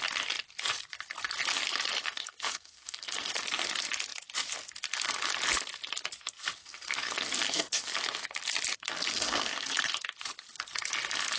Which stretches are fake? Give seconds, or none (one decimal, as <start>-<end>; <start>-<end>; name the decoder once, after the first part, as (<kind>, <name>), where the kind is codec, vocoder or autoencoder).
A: 2.0-3.3 (codec, SNAC); 6.6-7.9; 9.1-9.8